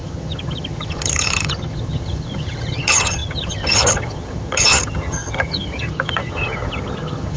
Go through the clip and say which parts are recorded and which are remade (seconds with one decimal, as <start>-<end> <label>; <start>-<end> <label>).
0.0-7.4 remade